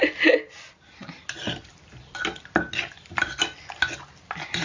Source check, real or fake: real